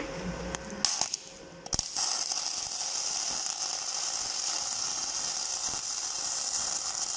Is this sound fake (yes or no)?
no